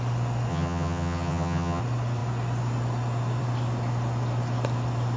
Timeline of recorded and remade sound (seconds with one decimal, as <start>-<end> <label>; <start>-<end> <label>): 0.0-0.5 recorded; 0.5-1.8 remade; 1.8-5.2 recorded